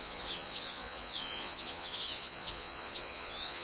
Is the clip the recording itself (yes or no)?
no